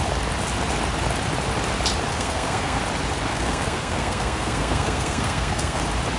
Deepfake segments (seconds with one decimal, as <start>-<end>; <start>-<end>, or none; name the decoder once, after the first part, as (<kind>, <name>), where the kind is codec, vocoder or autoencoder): 2.1-2.8 (codec, SNAC); 3.3-5.8